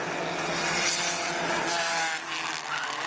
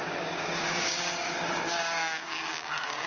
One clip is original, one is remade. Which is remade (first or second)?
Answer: second